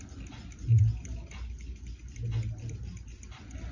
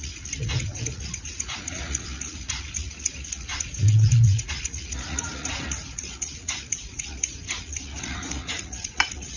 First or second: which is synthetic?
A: second